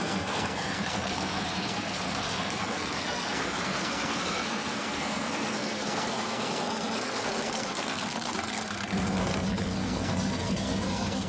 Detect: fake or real fake